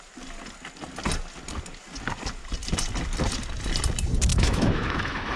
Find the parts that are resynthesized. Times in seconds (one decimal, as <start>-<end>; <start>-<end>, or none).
4.3-5.4